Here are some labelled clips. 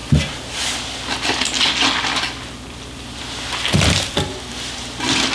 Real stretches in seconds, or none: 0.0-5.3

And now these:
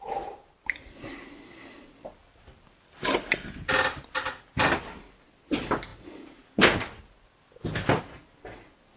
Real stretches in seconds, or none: 0.0-2.2; 4.0-9.0

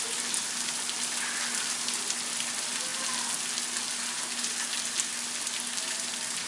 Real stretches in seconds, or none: 0.0-6.5

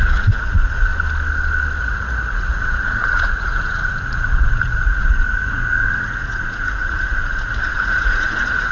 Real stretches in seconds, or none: 0.9-1.8

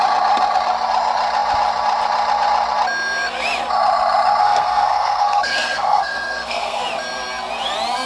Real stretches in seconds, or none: 0.0-4.4; 6.8-8.1

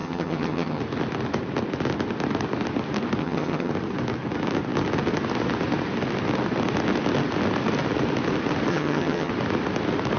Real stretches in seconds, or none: 0.8-3.2; 3.7-8.7; 9.3-10.2